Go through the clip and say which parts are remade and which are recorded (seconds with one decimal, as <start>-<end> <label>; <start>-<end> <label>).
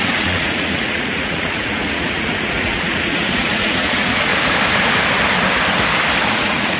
0.0-4.3 remade; 4.3-6.3 recorded; 6.3-6.8 remade